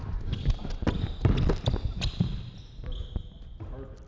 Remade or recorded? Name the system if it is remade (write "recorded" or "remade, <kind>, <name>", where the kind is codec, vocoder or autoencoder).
recorded